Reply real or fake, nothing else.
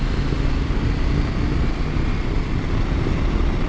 real